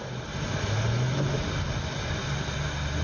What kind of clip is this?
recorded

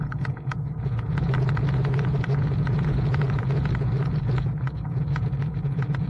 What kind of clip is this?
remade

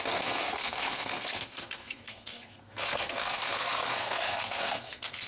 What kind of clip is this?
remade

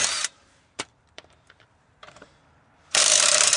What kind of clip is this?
remade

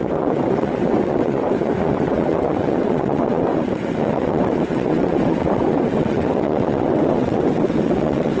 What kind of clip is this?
remade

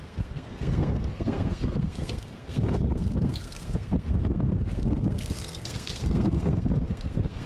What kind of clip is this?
remade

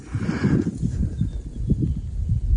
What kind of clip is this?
recorded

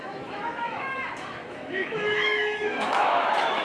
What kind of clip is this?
remade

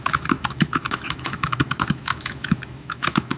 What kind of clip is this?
remade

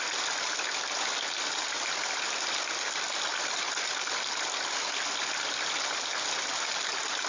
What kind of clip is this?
recorded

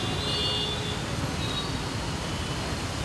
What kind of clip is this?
recorded